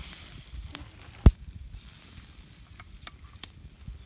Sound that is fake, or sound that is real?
real